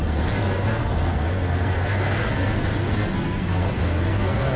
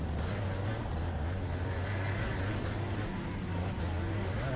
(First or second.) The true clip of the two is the second